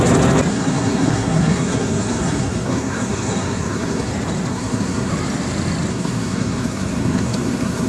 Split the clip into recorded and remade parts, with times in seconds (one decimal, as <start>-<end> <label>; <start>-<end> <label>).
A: 0.0-0.5 recorded; 0.5-4.1 remade; 4.1-4.5 recorded; 4.5-5.1 remade; 5.1-5.9 recorded; 5.9-7.9 remade